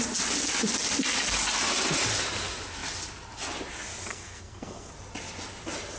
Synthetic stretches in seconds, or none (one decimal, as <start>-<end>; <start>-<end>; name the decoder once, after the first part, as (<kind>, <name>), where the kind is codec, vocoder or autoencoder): 4.1-4.9 (codec, SNAC)